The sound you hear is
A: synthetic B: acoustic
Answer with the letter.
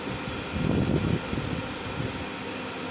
B